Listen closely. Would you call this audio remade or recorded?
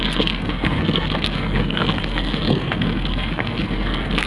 remade